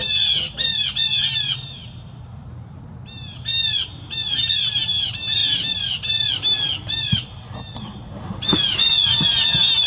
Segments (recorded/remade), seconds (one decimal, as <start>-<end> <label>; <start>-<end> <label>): 0.0-5.4 recorded; 5.4-6.3 remade; 6.3-9.9 recorded